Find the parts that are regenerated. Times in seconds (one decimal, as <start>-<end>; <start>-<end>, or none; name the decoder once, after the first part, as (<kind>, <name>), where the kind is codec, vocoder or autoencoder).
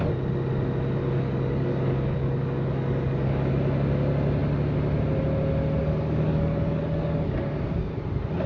1.0-3.5 (codec, DAC); 5.8-7.6